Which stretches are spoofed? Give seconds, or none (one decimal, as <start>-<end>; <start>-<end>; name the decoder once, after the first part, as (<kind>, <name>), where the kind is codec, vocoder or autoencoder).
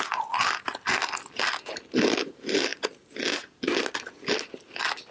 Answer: none